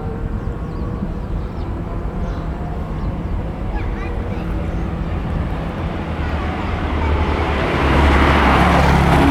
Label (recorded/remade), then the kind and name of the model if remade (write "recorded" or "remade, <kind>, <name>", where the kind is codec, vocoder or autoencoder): remade, vocoder, BigVGAN v2